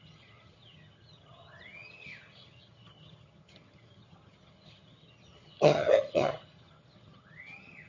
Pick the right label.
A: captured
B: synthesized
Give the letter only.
B